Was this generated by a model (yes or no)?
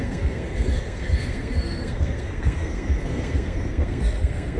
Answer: yes